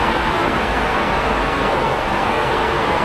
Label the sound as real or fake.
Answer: fake